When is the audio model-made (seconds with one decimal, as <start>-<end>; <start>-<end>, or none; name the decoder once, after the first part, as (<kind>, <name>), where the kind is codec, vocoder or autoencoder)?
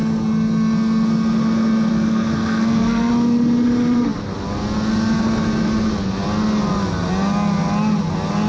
1.9-3.1 (codec, SNAC)